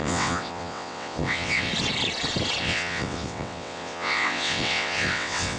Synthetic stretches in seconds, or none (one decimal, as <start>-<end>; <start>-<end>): 0.0-1.7; 2.6-5.6